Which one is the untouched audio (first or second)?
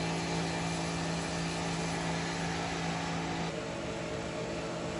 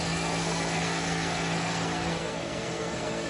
first